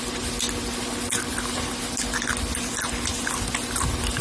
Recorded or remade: recorded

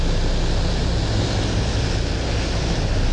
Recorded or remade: recorded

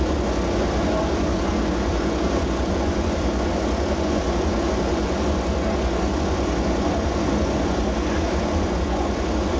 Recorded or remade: remade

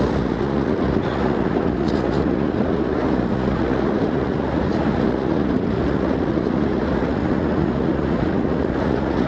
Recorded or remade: remade